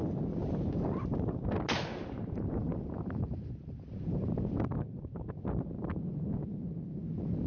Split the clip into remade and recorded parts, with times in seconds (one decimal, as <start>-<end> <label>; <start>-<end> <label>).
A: 0.0-0.4 recorded; 0.4-1.4 remade; 1.4-1.9 recorded; 1.9-5.3 remade; 5.3-7.5 recorded